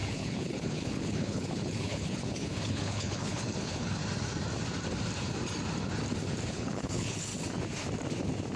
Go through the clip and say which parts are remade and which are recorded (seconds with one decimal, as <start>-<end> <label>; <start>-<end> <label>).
0.0-4.0 remade; 4.0-6.5 recorded; 6.5-7.3 remade; 7.3-8.6 recorded